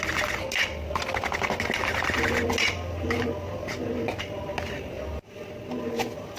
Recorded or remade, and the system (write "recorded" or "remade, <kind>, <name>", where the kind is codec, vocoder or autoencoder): recorded